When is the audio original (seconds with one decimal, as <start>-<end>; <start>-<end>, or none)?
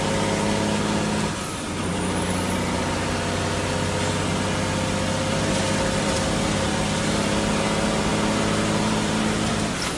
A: 0.0-10.0